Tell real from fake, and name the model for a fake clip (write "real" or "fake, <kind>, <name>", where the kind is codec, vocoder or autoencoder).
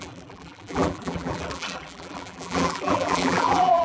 fake, vocoder, BigVGAN v2